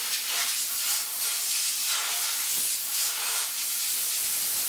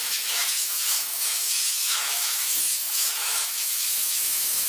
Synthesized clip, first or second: second